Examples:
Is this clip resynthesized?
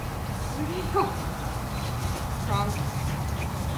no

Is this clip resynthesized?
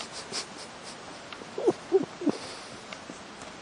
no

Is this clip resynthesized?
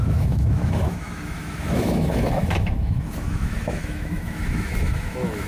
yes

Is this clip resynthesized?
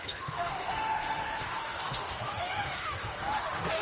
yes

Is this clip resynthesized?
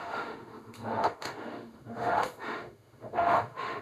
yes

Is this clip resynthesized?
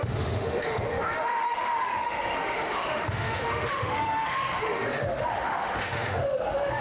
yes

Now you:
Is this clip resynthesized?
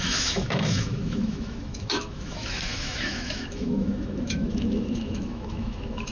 yes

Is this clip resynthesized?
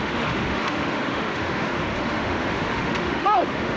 yes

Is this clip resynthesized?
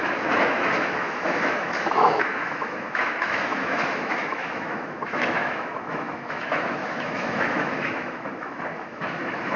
yes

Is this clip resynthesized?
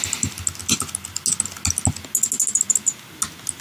no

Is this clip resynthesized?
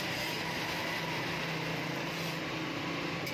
no